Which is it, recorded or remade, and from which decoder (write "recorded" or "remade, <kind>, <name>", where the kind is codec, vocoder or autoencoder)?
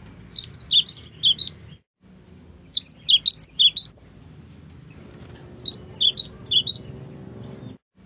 recorded